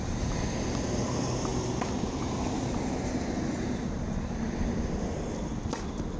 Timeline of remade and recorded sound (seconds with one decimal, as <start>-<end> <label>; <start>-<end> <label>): 0.0-1.5 recorded; 1.5-2.4 remade; 2.4-6.2 recorded